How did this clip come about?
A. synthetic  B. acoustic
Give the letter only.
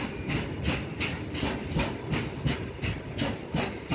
B